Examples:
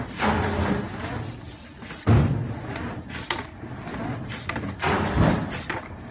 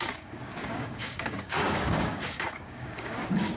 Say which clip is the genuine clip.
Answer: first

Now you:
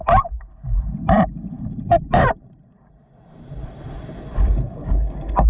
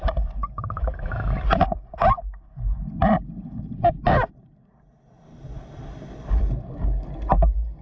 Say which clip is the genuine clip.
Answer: second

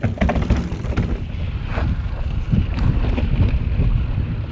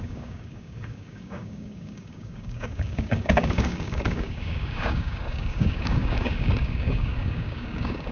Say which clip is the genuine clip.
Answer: first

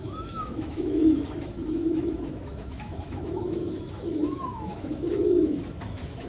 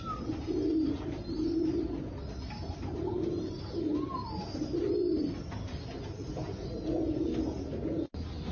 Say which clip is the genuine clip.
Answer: second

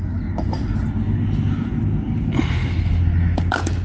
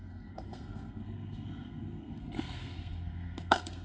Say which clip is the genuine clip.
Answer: first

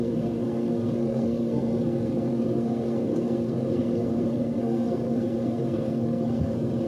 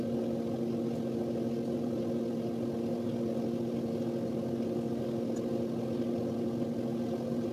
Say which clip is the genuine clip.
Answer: second